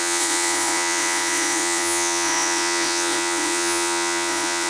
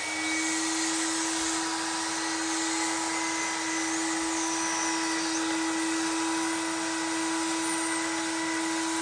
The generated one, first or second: first